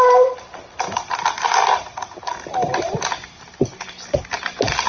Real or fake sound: real